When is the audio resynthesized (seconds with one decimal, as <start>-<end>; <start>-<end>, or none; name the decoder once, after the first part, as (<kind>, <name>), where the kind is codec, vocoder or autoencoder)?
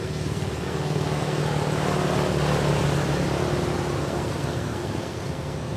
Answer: 0.0-1.4 (codec, SNAC); 4.0-5.8